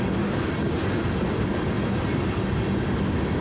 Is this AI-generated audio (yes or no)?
no